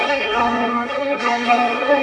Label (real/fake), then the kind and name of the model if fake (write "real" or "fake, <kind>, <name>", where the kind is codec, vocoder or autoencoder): fake, codec, SNAC